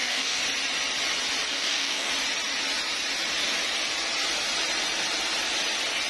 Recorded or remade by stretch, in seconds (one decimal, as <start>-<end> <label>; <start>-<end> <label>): 0.0-0.4 remade; 0.4-1.5 recorded; 1.5-2.1 remade; 2.1-6.1 recorded